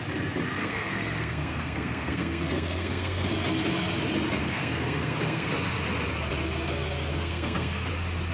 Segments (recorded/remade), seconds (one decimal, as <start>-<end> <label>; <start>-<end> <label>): 0.0-0.6 recorded; 0.6-3.3 remade; 3.3-4.4 recorded; 4.4-5.5 remade; 5.5-7.1 recorded; 7.1-7.9 remade; 7.9-8.3 recorded